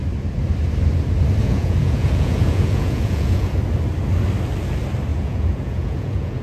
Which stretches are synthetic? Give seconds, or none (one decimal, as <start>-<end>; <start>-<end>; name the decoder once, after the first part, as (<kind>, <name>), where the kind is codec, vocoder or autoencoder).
1.4-3.5 (vocoder, Vocos); 5.1-6.4